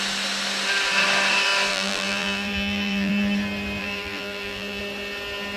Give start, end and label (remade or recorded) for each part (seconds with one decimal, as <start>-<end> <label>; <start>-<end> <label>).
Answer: 0.0-1.7 recorded; 1.7-3.1 remade; 3.1-3.8 recorded; 3.8-4.8 remade; 4.8-5.6 recorded

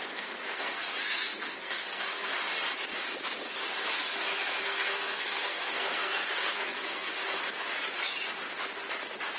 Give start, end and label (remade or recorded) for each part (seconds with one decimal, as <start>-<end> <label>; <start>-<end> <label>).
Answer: 0.0-2.3 remade; 2.3-4.6 recorded; 4.6-7.1 remade; 7.1-9.4 recorded

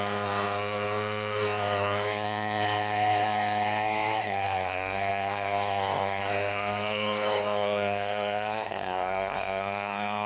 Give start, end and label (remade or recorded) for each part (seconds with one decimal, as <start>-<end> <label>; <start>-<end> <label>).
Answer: 0.0-10.3 remade

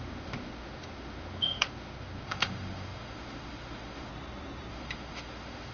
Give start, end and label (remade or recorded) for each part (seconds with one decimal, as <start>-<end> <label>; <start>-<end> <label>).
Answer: 0.0-4.1 remade; 4.1-4.7 recorded; 4.7-5.7 remade

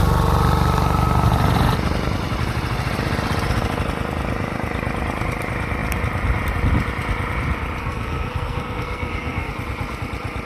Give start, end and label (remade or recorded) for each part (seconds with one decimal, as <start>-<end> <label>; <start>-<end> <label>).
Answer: 0.0-7.8 recorded; 7.8-9.5 remade; 9.5-10.5 recorded